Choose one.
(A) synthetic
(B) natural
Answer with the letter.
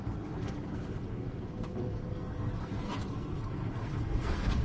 A